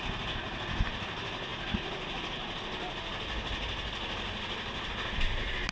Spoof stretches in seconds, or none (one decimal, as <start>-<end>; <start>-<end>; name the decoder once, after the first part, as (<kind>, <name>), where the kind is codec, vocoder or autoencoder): none